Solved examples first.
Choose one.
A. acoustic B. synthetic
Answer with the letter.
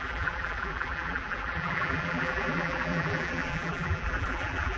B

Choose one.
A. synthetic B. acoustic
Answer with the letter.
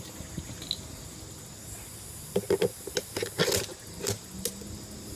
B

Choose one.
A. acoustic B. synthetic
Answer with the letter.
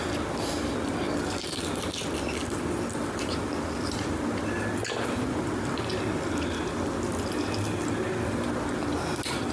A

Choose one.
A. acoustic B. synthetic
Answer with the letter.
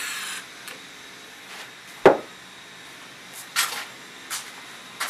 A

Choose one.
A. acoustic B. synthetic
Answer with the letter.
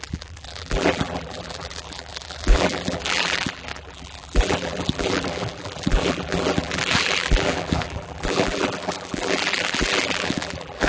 B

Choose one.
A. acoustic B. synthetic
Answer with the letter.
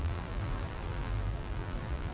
B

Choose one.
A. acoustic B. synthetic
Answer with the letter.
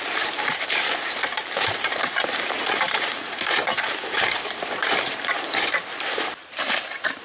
B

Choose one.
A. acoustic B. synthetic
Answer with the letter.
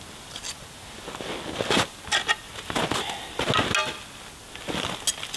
A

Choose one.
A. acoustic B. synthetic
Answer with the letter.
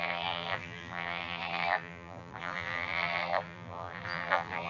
B